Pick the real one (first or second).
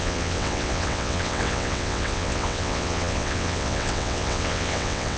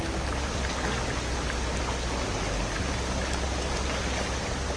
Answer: second